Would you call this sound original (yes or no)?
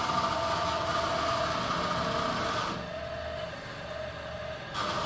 yes